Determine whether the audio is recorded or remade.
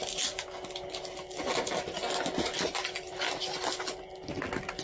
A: recorded